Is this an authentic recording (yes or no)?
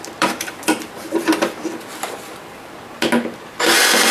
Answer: no